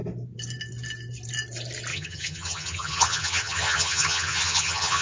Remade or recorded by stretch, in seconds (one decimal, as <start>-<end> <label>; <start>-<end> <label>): 0.0-1.9 recorded; 1.9-5.0 remade